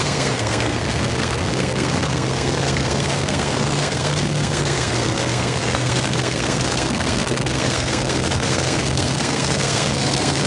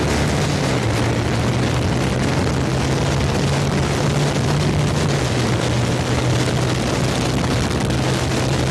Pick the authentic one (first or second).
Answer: second